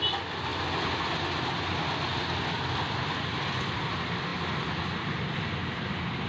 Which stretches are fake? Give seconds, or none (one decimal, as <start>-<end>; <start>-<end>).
none